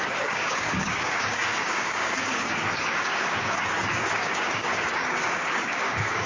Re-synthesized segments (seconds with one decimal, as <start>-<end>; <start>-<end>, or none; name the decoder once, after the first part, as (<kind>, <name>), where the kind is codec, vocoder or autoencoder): 0.0-6.3 (codec, DAC)